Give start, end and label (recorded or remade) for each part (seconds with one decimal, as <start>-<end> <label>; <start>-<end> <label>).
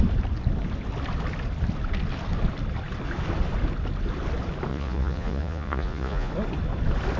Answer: 0.0-4.7 recorded; 4.7-6.3 remade; 6.3-7.2 recorded